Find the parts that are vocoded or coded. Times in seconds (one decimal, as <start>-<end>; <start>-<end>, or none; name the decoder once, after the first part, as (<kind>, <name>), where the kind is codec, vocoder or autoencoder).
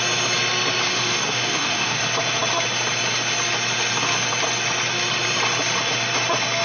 0.9-2.0 (autoencoder, DAC-VAE)